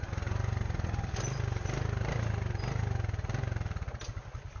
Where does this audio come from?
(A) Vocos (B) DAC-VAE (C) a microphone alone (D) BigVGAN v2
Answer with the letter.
C